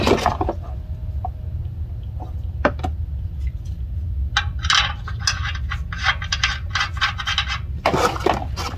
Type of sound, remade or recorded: recorded